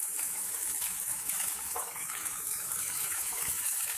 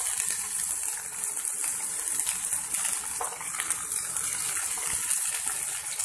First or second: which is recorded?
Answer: second